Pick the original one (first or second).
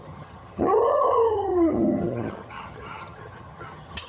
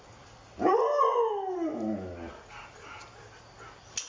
second